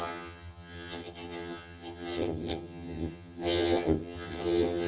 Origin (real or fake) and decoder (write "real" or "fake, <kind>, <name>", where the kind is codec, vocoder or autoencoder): fake, vocoder, HiFi-GAN